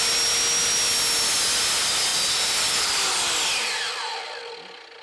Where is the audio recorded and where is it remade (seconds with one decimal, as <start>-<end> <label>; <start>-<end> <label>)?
0.0-2.1 recorded; 2.1-3.9 remade; 3.9-5.0 recorded